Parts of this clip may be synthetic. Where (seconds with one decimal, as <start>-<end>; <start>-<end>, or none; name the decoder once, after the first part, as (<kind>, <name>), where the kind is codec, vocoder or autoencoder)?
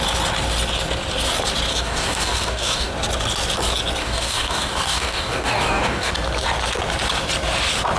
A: 1.7-2.9 (codec, DAC); 4.0-6.1